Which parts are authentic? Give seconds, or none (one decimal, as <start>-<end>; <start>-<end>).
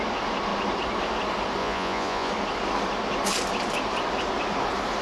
0.0-1.6; 2.3-5.0